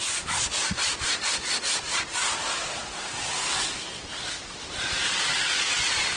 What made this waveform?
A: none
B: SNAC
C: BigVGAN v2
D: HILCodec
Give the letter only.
A